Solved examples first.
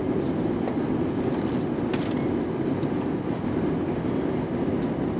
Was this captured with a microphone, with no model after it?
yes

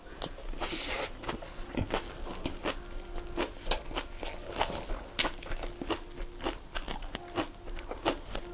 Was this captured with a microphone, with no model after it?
yes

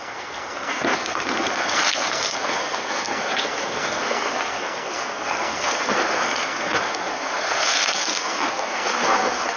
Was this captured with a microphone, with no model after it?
no